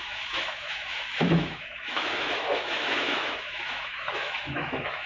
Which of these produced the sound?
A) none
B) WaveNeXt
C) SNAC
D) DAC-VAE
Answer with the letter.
D